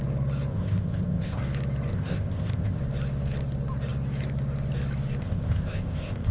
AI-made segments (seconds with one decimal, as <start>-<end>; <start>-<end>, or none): 0.5-1.4; 1.9-2.8; 5.2-6.3